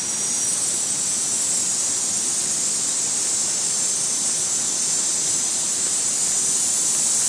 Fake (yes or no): yes